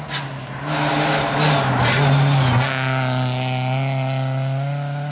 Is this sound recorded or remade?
recorded